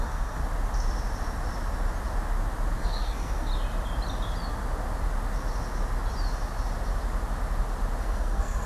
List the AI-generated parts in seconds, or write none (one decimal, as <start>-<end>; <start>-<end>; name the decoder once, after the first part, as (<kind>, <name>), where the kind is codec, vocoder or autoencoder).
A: 0.0-0.4 (codec, SNAC); 2.8-3.5; 8.0-8.7